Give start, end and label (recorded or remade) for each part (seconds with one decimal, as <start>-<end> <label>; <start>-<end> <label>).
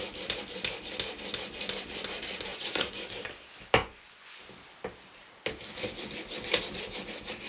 0.0-2.5 recorded; 2.5-3.1 remade; 3.1-3.8 recorded; 3.8-4.4 remade; 4.4-7.5 recorded